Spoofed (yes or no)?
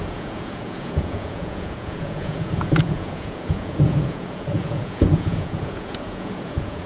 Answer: yes